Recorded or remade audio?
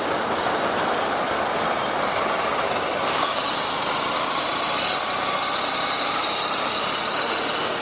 recorded